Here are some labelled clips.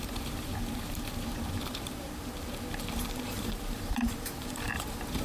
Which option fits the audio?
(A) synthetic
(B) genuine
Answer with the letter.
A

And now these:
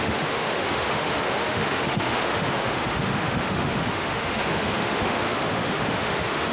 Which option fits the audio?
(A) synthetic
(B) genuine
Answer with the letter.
A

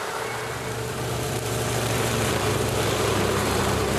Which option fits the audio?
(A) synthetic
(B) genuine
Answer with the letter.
A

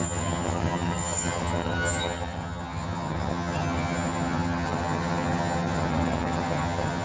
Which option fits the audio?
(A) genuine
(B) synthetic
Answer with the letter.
B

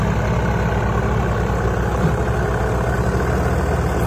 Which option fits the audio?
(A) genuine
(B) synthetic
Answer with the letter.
A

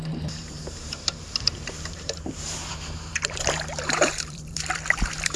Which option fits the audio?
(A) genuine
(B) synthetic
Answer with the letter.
B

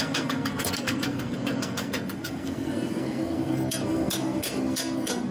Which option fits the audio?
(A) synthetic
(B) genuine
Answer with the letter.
A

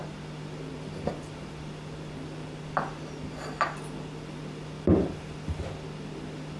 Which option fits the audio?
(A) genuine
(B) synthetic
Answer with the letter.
A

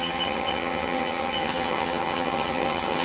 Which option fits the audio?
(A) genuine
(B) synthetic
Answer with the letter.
B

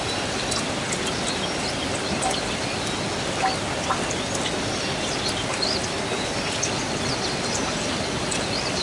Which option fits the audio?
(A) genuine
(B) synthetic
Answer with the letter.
A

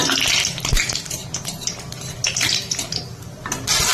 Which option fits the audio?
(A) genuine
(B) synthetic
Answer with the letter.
A